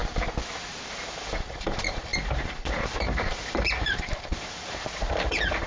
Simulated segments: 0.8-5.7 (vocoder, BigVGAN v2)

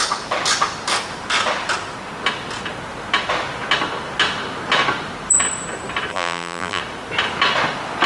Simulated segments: 6.1-6.8 (vocoder, BigVGAN v2)

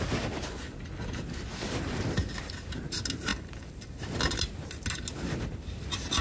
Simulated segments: 3.3-4.0 (vocoder, BigVGAN v2)

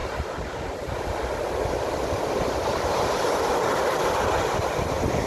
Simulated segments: none

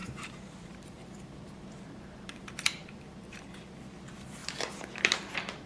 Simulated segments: 0.0-3.4 (vocoder, BigVGAN v2); 4.4-5.7

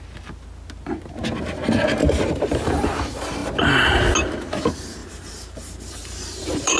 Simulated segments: 2.0-2.5 (vocoder, BigVGAN v2); 5.0-6.8